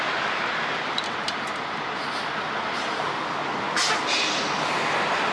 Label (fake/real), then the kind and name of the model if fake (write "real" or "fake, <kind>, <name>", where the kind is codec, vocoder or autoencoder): real